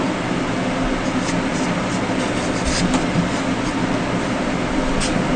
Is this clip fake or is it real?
real